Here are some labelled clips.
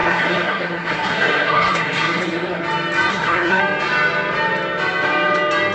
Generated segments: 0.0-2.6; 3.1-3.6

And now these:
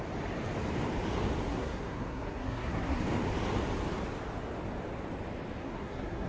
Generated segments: 1.5-3.0; 5.6-6.3

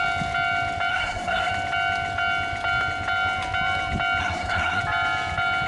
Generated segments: 0.9-1.5; 4.2-4.8

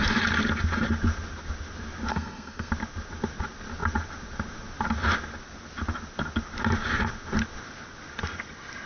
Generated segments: 2.1-2.7

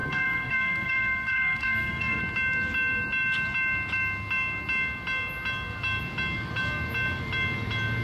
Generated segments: 0.0-2.2

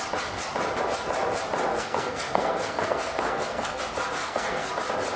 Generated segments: 1.7-3.8; 4.2-4.7

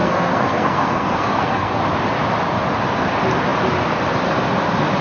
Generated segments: 0.0-1.8